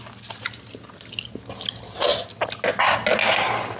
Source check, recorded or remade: recorded